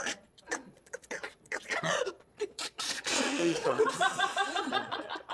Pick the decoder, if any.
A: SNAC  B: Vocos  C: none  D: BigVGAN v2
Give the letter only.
B